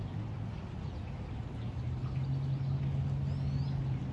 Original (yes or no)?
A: yes